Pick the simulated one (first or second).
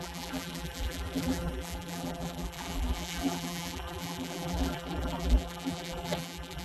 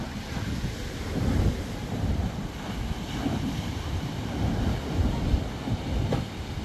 first